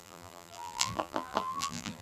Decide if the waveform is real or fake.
fake